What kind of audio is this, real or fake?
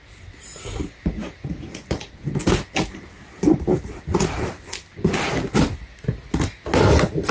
real